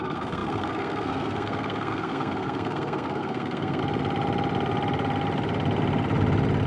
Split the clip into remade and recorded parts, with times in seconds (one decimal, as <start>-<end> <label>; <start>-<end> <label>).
0.0-3.8 remade; 3.8-6.7 recorded